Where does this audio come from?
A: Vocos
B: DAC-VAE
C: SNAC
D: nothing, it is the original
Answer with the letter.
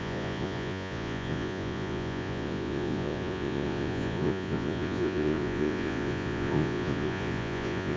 A